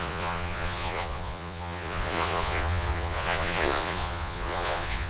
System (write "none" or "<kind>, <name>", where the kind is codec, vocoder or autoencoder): vocoder, Vocos